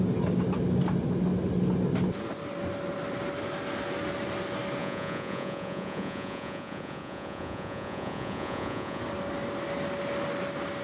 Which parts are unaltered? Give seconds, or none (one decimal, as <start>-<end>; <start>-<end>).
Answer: 0.0-4.8; 9.0-10.8